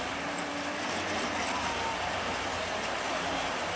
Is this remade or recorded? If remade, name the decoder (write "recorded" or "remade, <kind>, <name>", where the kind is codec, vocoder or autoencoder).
remade, vocoder, BigVGAN v2